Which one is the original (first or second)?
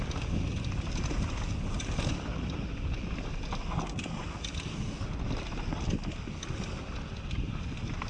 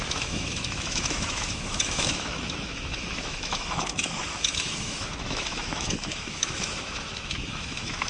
first